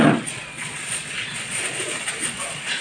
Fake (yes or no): yes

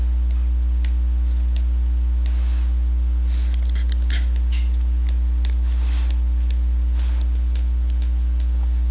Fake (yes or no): no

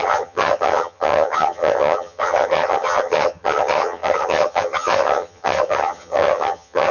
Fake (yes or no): yes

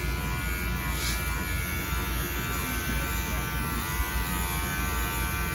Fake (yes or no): no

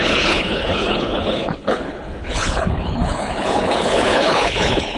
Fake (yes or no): yes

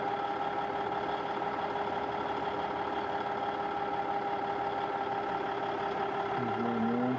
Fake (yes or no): no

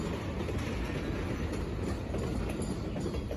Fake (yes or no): no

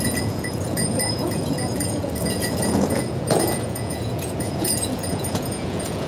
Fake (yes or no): yes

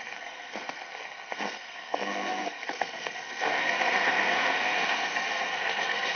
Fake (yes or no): yes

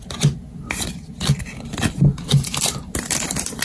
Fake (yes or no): no